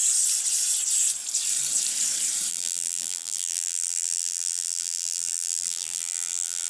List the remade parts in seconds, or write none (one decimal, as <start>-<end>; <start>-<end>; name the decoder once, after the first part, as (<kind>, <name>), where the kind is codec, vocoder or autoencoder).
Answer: 2.5-6.7 (vocoder, BigVGAN v2)